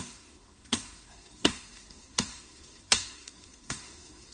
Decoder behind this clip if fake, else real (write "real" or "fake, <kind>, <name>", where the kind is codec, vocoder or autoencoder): fake, codec, SNAC